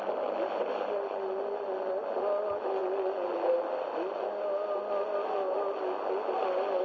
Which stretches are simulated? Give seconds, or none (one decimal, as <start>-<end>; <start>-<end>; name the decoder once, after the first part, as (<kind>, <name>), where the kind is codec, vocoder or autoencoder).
none